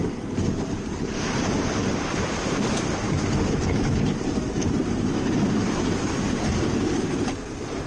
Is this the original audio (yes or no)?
no